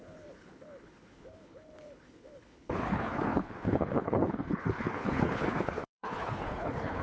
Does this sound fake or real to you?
fake